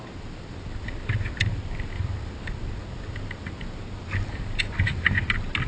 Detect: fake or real real